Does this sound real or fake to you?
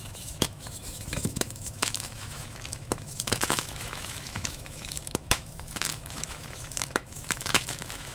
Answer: fake